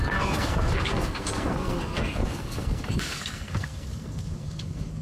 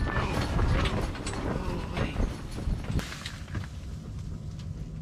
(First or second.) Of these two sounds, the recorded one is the second